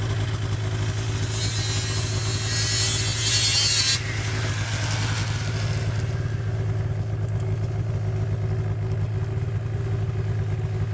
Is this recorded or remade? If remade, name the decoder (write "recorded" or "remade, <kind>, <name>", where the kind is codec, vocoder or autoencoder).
recorded